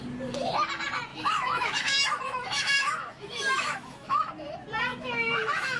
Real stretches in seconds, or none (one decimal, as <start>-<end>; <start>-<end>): 0.0-1.1; 4.3-4.9

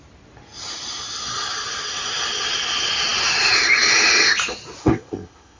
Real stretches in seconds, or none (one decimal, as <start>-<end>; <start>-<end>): 0.0-4.8